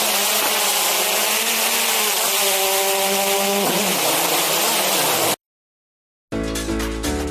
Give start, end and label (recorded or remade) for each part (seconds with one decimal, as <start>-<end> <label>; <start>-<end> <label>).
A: 0.0-7.3 recorded